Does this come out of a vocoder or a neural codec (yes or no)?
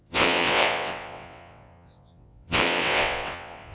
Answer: yes